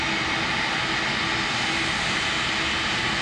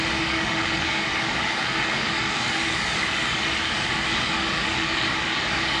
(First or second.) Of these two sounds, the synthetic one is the second